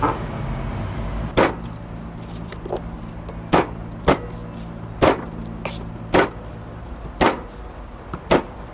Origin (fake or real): real